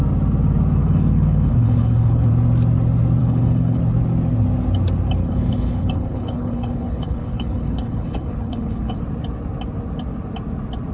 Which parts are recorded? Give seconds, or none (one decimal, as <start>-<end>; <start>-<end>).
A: 0.0-0.8; 2.3-3.2; 3.8-5.2; 9.0-10.9